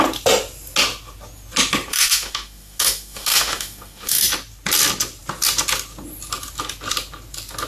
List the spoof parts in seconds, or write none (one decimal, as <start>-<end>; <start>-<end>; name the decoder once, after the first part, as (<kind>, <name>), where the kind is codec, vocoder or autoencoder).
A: 1.9-4.2 (autoencoder, DAC-VAE)